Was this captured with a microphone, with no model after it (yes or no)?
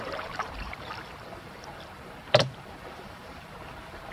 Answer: no